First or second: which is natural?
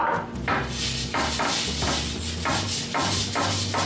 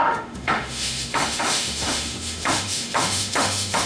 first